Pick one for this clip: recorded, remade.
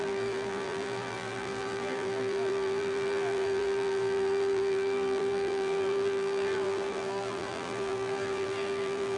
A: remade